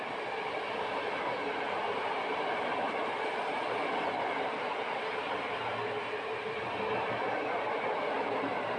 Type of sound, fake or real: real